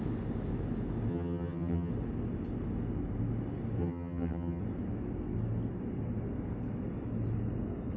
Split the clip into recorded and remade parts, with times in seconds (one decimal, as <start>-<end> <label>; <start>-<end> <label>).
0.0-1.1 recorded; 1.1-1.9 remade; 1.9-3.8 recorded; 3.8-4.6 remade; 4.6-8.0 recorded